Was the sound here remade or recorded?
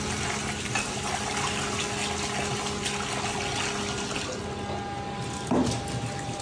recorded